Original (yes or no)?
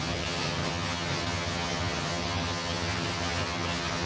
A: no